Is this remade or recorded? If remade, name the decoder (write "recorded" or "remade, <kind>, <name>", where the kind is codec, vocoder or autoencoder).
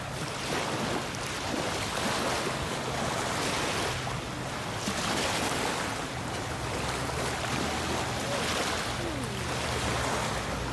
recorded